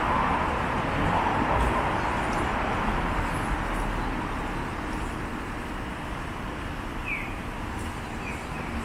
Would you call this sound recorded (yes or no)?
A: yes